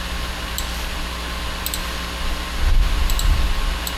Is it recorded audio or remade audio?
recorded